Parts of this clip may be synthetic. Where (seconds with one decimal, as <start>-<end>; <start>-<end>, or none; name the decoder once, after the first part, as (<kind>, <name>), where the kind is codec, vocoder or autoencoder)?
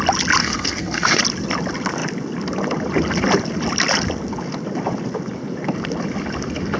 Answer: 0.4-1.2 (codec, SNAC)